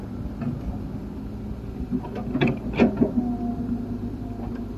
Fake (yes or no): no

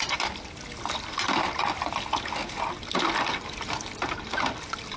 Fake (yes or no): no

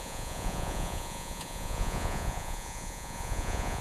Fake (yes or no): yes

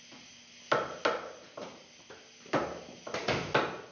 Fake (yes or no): no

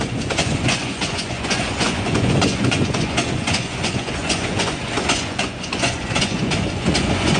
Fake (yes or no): yes